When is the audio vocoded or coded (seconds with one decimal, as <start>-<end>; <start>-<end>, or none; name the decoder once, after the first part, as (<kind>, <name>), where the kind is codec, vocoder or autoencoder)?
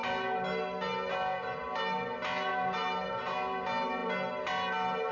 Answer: none